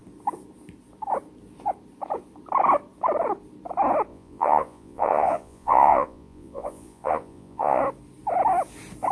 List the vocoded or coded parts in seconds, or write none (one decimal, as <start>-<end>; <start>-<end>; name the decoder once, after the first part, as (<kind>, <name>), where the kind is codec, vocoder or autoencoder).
4.1-7.8 (vocoder, Vocos)